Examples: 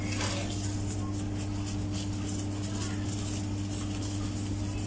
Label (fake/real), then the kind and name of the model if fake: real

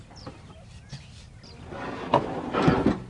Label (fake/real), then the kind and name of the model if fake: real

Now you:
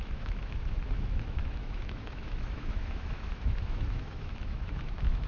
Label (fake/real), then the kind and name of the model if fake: fake, autoencoder, DAC-VAE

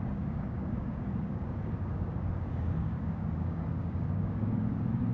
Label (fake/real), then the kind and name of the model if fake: fake, codec, DAC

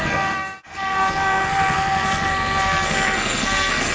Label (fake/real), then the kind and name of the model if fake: fake, codec, SNAC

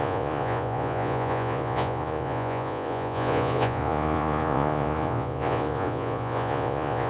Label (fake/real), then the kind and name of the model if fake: fake, vocoder, Vocos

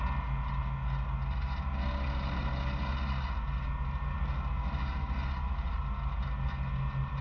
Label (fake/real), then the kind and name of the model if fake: real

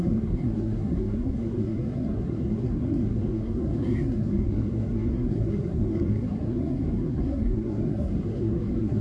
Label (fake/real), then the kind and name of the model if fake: fake, codec, SNAC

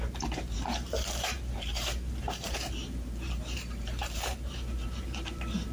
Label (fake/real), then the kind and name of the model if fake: fake, vocoder, BigVGAN v2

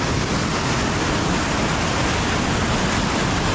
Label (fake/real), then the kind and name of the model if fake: real